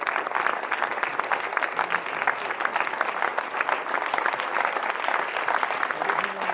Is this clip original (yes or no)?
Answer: yes